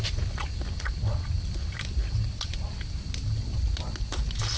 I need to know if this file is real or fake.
real